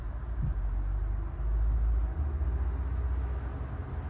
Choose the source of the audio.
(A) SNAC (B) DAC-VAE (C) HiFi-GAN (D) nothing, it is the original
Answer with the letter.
D